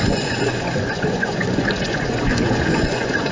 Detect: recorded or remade remade